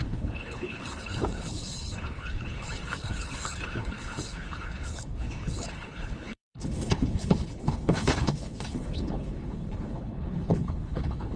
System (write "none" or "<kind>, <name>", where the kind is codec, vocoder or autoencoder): codec, HILCodec